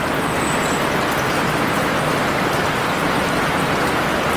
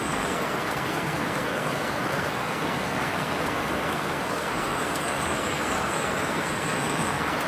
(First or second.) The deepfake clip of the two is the second